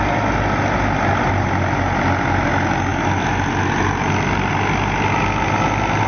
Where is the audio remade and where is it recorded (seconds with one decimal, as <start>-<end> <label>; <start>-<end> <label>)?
0.0-6.1 recorded